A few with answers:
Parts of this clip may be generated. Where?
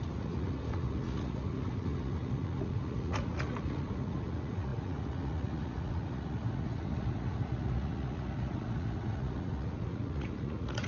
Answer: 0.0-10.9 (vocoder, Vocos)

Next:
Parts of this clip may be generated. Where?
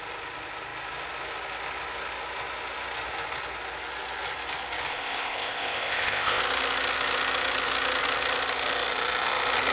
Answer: 4.9-6.4 (codec, ZipCodec)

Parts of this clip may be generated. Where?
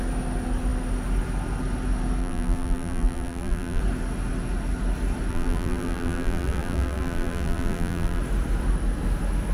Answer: 2.2-3.8 (vocoder, BigVGAN v2); 5.3-8.2